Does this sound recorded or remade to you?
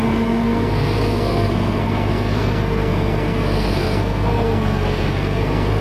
remade